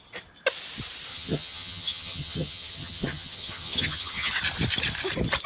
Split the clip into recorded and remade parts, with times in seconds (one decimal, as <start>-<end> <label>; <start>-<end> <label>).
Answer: 0.0-1.1 recorded; 1.1-4.3 remade; 4.3-5.5 recorded